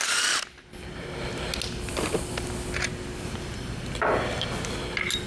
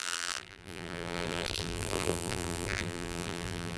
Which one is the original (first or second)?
first